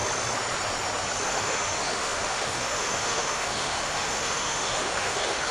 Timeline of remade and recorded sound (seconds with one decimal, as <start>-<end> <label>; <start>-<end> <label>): 0.0-1.3 recorded; 1.3-5.5 remade